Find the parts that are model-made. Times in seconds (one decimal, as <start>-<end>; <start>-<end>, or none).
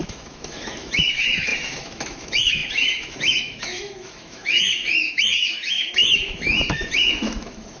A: 0.0-7.8